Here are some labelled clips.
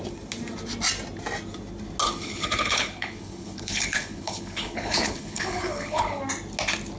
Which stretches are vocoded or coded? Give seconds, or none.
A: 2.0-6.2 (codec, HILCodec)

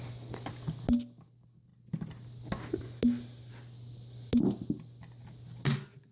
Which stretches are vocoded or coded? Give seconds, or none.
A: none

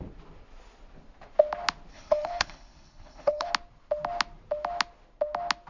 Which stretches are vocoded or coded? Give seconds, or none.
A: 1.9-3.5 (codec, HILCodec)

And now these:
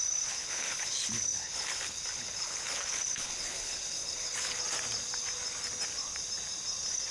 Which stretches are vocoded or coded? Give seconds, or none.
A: 0.4-4.6 (codec, HILCodec)

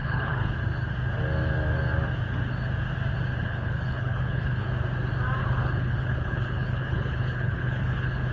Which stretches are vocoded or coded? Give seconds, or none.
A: 0.0-0.6 (codec, HILCodec); 3.4-4.7; 5.4-8.3

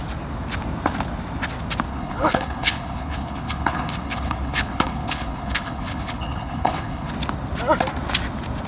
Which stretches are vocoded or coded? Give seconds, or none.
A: 1.9-7.1 (codec, HILCodec)

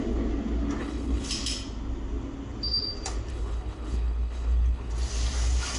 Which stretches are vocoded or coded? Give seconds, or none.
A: 0.8-1.3 (codec, HILCodec); 3.3-4.9

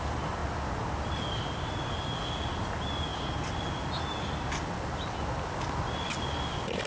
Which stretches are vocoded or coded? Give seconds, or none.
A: none